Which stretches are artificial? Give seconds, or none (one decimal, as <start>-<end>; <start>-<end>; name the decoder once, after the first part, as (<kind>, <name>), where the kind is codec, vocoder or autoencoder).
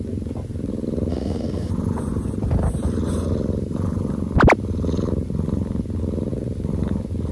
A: 1.1-1.7 (autoencoder, DAC-VAE)